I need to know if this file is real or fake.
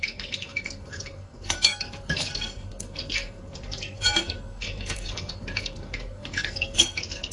fake